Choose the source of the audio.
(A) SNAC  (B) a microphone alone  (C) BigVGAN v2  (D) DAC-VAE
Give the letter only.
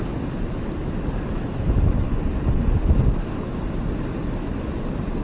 C